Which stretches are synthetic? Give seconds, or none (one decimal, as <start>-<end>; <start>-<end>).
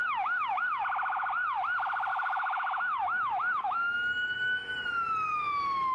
0.0-0.6; 2.1-4.7